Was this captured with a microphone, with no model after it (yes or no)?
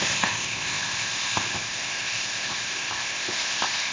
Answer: no